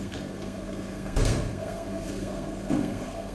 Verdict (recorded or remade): remade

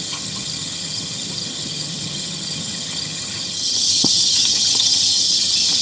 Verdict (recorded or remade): remade